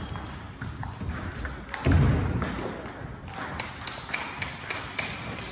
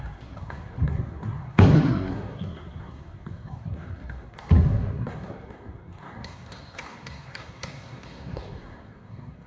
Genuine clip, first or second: first